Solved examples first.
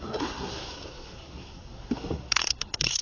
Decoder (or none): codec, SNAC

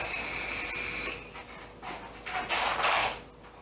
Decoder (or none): none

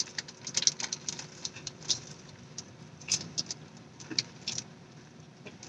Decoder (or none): none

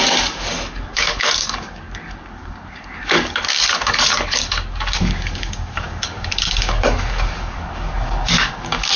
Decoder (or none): codec, DAC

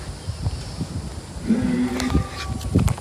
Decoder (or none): none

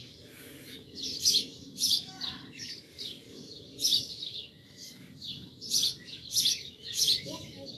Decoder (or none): codec, DAC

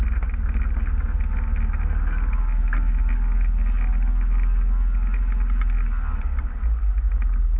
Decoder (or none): none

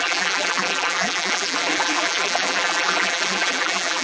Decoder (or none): vocoder, BigVGAN v2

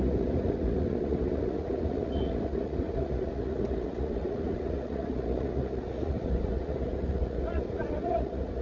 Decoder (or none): vocoder, Vocos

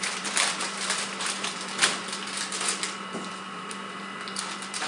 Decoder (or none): vocoder, BigVGAN v2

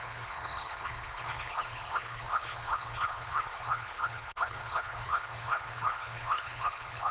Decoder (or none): codec, HILCodec